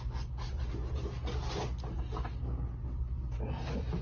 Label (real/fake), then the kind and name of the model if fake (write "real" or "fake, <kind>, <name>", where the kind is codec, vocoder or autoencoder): real